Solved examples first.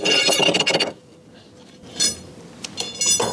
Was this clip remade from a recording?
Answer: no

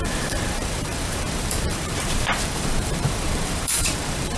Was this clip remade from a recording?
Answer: yes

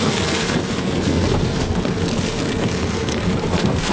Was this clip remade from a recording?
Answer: yes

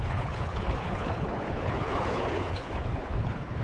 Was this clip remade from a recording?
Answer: yes